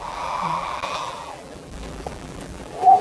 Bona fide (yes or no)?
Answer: no